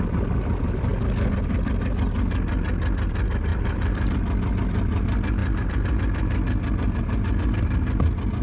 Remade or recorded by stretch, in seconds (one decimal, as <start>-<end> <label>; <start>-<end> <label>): 0.0-3.5 recorded; 3.5-4.1 remade; 4.1-8.4 recorded